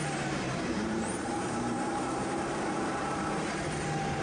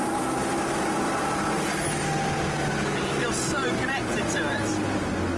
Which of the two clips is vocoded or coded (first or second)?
first